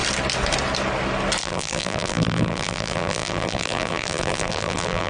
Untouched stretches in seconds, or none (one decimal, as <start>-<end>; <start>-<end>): 0.0-1.4